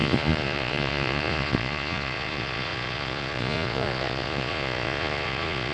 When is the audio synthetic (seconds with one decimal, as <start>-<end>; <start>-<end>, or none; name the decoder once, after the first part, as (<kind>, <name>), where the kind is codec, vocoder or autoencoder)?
0.0-5.7 (vocoder, Vocos)